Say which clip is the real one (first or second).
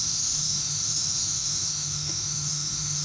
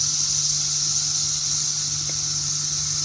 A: second